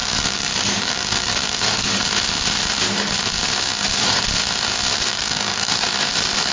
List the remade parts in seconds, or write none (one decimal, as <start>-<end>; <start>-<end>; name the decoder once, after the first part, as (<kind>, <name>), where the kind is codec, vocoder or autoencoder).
0.0-2.0 (codec, DAC); 5.1-5.7